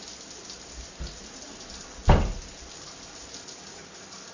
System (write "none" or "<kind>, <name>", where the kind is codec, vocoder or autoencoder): none